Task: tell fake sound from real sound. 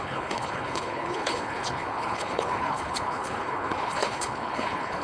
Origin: fake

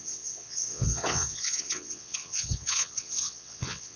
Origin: fake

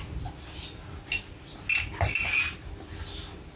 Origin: real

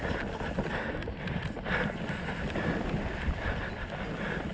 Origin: real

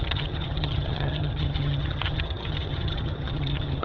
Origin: fake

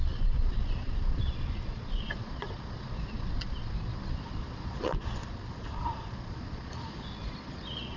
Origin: fake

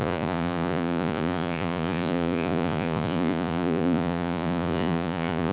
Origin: fake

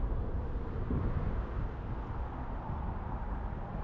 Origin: real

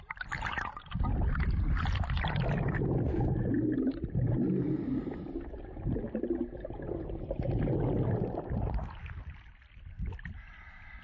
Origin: real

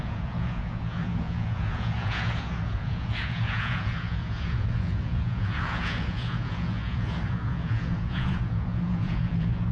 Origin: fake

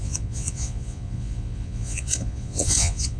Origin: fake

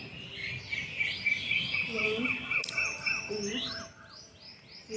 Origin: real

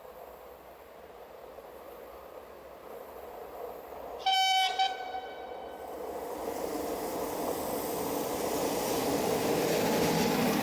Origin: real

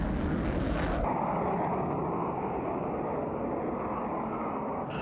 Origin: real